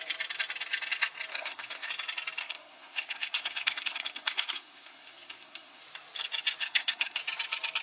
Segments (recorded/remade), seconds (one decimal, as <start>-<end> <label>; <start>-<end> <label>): 0.0-1.3 recorded; 1.3-1.9 remade; 1.9-2.4 recorded; 2.4-5.8 remade; 5.8-6.6 recorded; 6.6-7.2 remade; 7.2-7.8 recorded